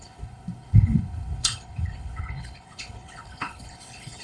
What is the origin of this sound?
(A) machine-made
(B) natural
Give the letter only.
A